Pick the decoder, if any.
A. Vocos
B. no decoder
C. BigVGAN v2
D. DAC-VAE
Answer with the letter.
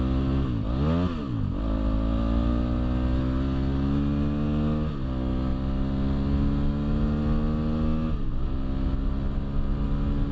B